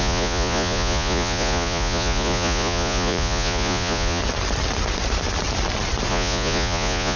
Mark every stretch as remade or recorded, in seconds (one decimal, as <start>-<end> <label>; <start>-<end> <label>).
0.0-4.2 remade; 4.2-6.1 recorded; 6.1-7.2 remade